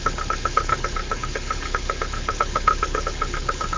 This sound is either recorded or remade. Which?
remade